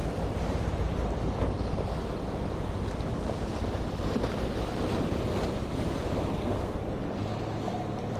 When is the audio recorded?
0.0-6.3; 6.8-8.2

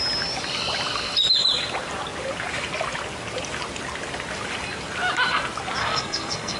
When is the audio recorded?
0.0-5.8

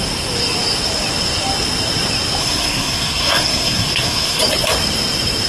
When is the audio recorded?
0.0-2.4; 4.4-5.5

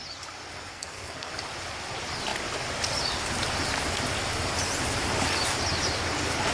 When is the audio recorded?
0.0-0.7; 1.3-6.5

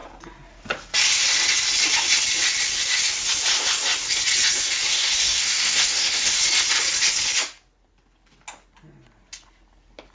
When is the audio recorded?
0.0-4.9; 6.4-10.1

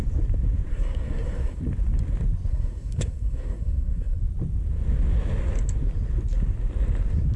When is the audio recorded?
0.0-0.7; 1.6-2.5; 4.2-7.4

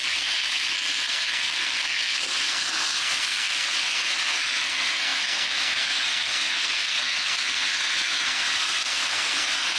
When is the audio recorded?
none